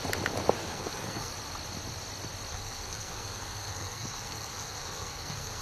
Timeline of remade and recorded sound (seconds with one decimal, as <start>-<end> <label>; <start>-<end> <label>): 0.0-0.6 recorded; 0.6-1.3 remade; 1.3-2.5 recorded; 2.5-5.6 remade